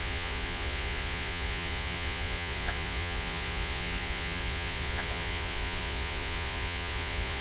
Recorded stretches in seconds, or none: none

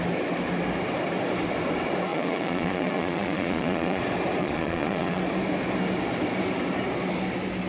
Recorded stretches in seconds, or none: 0.0-2.1; 4.0-4.4; 5.2-7.7